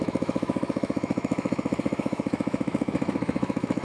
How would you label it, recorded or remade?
remade